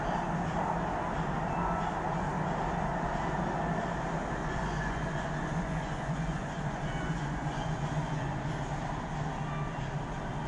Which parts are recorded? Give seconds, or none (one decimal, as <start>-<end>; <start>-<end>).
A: 0.0-4.4; 8.5-10.5